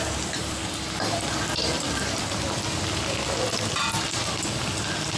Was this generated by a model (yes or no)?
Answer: no